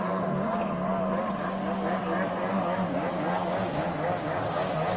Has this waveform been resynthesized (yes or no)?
no